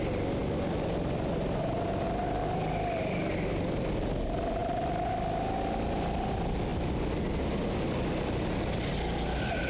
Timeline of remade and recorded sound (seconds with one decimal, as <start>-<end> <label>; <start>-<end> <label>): 0.0-9.7 recorded